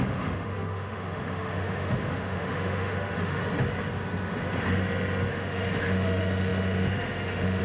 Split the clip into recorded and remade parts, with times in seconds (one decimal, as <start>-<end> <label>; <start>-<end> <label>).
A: 0.0-3.4 remade; 3.4-5.3 recorded; 5.3-7.6 remade